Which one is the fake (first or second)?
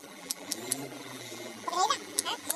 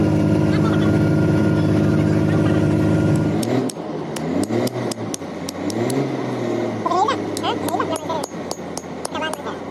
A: first